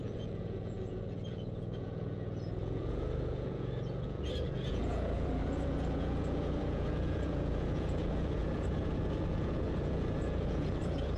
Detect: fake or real fake